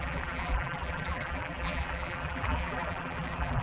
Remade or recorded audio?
remade